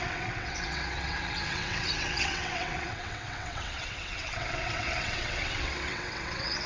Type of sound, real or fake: fake